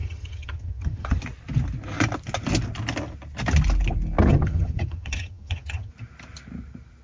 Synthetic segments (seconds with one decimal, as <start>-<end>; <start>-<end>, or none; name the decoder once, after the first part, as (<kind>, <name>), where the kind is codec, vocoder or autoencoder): 0.0-1.2 (vocoder, HiFi-GAN); 4.3-5.9